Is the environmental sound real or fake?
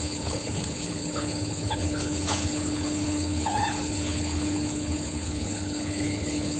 fake